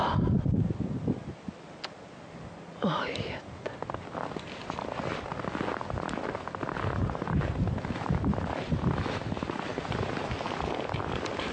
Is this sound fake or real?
real